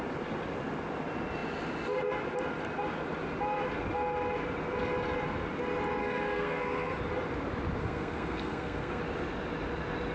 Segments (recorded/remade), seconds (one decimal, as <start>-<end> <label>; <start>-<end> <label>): 0.0-6.0 recorded; 6.0-7.0 remade; 7.0-7.8 recorded; 7.8-9.0 remade; 9.0-10.1 recorded